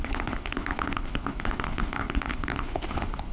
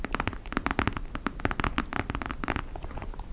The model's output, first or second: first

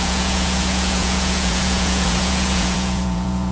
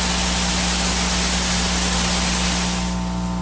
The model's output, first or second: first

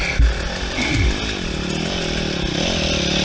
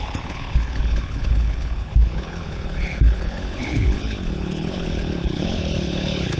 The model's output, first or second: second